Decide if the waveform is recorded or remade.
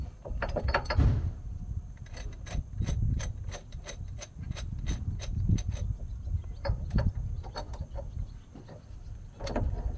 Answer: recorded